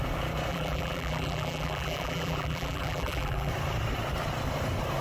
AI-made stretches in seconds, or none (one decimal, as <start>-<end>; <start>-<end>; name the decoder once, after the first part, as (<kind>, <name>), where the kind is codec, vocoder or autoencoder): 0.5-3.5 (vocoder, BigVGAN v2)